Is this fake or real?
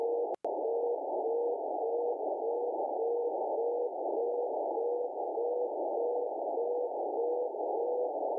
real